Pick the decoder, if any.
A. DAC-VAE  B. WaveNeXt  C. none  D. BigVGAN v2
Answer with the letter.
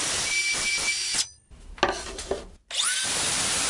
C